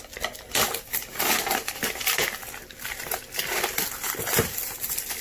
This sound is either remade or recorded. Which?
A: recorded